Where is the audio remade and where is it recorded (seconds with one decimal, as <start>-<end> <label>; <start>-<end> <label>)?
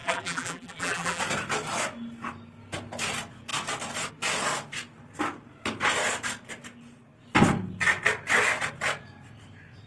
0.0-1.2 remade; 1.2-9.9 recorded